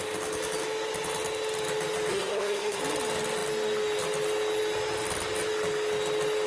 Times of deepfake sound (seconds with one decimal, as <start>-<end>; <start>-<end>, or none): 2.1-2.8